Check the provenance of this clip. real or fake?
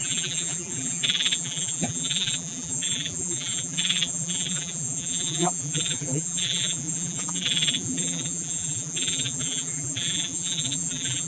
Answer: fake